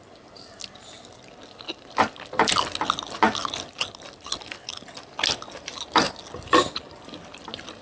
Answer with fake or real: real